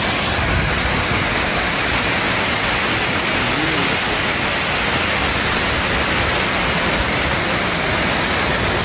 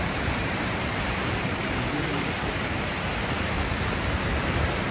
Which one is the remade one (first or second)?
second